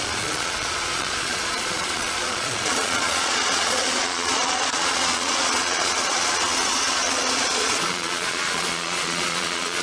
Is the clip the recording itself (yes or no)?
no